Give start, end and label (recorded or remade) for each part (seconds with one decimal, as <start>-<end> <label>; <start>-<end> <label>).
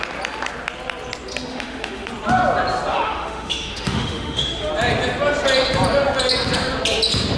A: 0.0-1.5 recorded; 1.5-2.1 remade; 2.1-2.9 recorded; 2.9-4.7 remade; 4.7-7.4 recorded